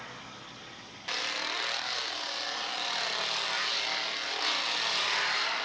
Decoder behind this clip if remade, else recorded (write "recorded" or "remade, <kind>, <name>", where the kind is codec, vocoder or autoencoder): recorded